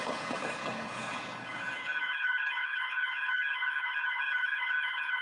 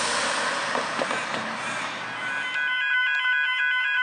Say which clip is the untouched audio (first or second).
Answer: second